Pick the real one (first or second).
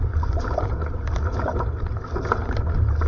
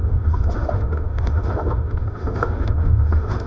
first